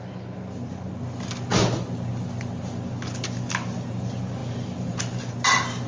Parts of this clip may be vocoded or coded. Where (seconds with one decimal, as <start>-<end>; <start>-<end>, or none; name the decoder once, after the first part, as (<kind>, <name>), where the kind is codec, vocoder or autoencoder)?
none

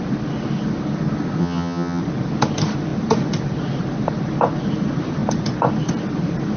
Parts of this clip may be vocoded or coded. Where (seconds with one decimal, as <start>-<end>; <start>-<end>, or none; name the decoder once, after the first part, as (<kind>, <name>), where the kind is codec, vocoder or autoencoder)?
1.4-2.0 (vocoder, HiFi-GAN)

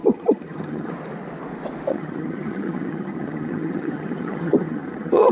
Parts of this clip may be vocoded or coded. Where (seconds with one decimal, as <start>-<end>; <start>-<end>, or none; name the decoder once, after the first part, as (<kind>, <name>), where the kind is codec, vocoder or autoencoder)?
0.0-0.9 (vocoder, HiFi-GAN); 1.9-5.3

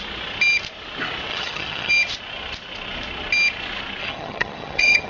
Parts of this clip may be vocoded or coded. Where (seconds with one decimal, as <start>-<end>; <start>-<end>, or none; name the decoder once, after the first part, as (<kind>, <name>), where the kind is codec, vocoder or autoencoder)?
1.3-1.9 (vocoder, HiFi-GAN); 4.0-5.1